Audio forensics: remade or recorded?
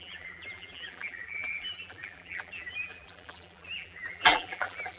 remade